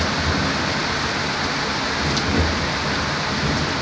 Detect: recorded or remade recorded